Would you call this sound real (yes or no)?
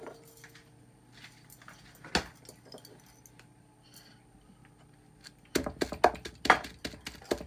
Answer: yes